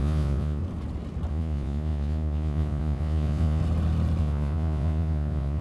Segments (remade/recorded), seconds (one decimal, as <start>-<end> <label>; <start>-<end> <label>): 0.0-0.6 remade; 0.6-1.3 recorded; 1.3-3.6 remade; 3.6-4.2 recorded; 4.2-5.6 remade